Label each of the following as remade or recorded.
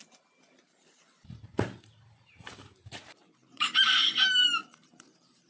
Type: remade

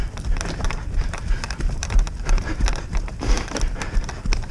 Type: remade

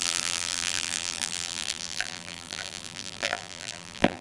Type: remade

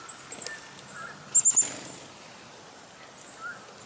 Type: recorded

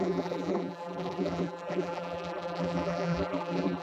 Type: remade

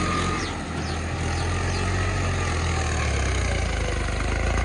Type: recorded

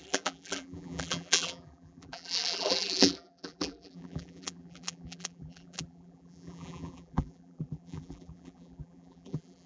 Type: remade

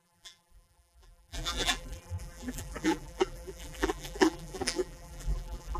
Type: remade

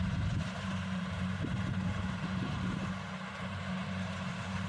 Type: remade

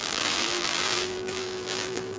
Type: remade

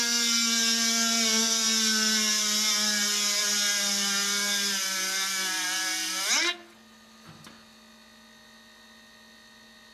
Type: recorded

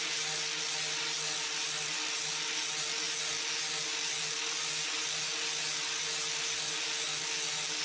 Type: recorded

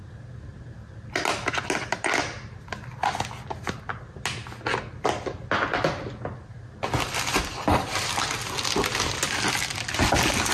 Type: recorded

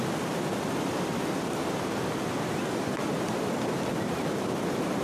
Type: recorded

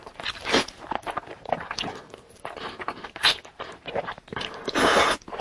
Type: remade